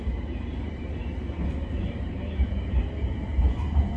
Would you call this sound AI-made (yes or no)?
yes